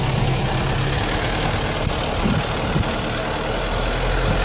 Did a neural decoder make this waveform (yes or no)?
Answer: no